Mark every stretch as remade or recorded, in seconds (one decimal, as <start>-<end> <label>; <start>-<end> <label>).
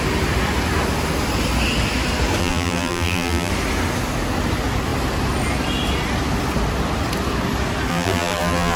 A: 0.0-2.4 recorded; 2.4-3.5 remade; 3.5-7.9 recorded; 7.9-8.8 remade